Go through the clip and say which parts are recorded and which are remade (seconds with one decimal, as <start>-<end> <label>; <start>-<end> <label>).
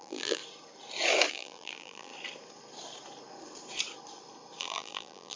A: 0.0-0.4 remade; 0.4-1.3 recorded; 1.3-2.1 remade; 2.1-4.6 recorded; 4.6-5.4 remade